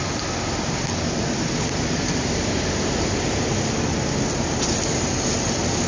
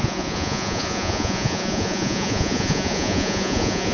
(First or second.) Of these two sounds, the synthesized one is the second